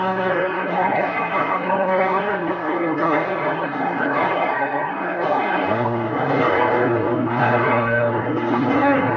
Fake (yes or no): yes